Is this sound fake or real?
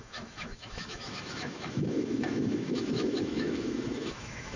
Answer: fake